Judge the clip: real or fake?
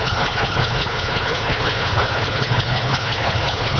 fake